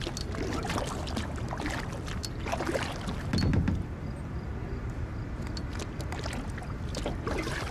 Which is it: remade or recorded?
recorded